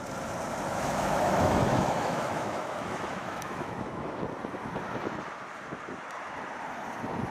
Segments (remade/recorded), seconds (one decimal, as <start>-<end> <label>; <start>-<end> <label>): 0.0-0.7 recorded; 0.7-4.2 remade; 4.2-7.3 recorded